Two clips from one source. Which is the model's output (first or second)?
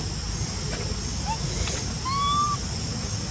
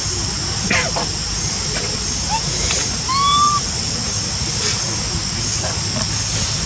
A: second